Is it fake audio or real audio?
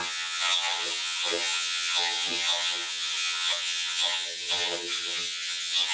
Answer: fake